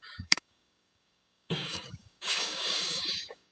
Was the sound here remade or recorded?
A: remade